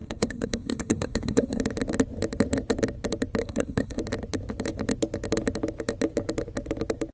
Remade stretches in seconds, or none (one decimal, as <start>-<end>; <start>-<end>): 0.0-1.6; 3.4-4.0